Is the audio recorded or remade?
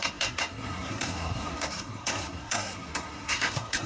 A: remade